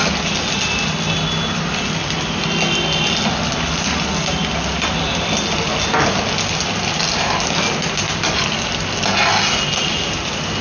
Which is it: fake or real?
real